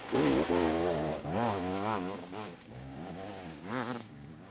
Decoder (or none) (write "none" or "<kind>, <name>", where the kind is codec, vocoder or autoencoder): codec, DAC